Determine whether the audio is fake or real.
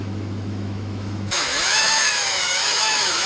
fake